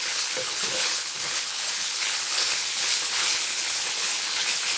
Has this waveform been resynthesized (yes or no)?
yes